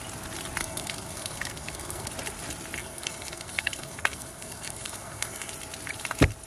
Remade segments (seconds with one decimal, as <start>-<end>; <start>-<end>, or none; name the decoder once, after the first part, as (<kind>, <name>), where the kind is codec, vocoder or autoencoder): 0.6-2.1 (codec, SNAC); 2.8-5.5